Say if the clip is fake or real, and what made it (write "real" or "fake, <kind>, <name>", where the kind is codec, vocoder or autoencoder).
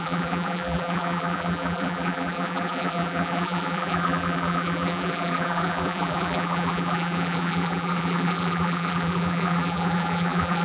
fake, vocoder, BigVGAN v2